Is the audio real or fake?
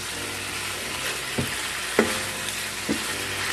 real